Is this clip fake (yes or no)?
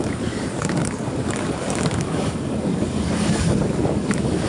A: yes